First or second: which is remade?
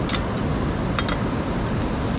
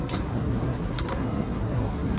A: second